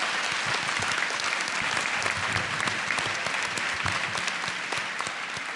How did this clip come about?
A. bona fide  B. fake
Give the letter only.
A